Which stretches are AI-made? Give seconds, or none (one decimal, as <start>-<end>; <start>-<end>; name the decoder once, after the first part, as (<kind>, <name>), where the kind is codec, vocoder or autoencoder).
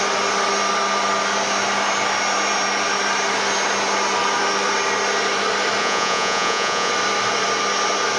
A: 5.8-6.9 (vocoder, Vocos)